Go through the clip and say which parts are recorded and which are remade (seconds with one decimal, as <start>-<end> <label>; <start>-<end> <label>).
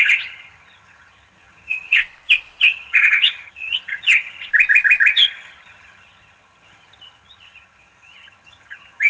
0.0-2.0 remade; 2.0-2.6 recorded; 2.6-4.5 remade; 4.5-5.1 recorded; 5.1-9.1 remade